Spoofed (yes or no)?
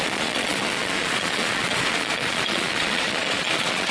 yes